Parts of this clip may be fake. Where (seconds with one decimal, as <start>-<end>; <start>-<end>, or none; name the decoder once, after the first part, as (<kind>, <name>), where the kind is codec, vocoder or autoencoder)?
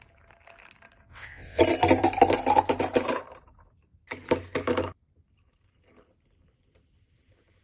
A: 1.1-1.6 (vocoder, WaveNeXt)